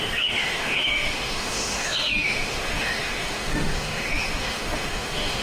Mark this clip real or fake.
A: fake